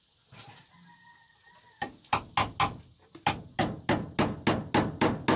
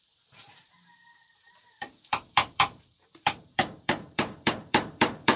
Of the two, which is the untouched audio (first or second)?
first